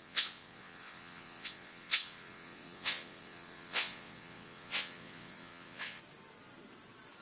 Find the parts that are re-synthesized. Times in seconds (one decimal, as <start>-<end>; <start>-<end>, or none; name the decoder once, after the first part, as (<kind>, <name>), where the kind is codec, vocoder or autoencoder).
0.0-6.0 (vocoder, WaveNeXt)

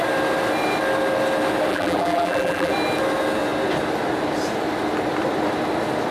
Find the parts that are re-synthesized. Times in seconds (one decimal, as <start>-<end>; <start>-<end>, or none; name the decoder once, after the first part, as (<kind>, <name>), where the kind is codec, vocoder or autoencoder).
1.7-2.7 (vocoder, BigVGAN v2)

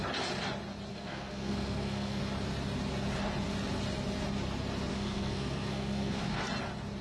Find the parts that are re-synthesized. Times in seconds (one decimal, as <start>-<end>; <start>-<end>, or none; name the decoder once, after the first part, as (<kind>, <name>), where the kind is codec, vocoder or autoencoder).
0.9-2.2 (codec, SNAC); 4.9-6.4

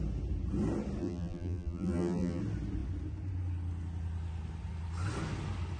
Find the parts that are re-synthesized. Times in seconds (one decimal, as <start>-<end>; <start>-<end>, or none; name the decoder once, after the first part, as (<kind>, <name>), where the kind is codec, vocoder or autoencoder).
1.0-2.4 (vocoder, BigVGAN v2)